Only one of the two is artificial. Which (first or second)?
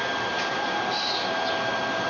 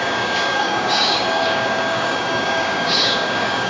second